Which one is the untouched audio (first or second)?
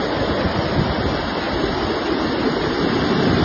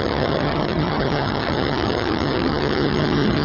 first